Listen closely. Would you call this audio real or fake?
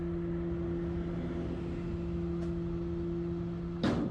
real